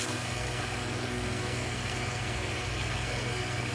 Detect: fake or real fake